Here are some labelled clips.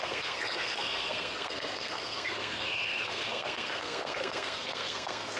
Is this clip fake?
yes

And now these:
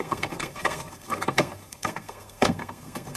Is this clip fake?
yes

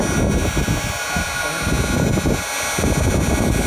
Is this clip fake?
no